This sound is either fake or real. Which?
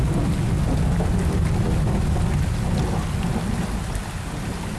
real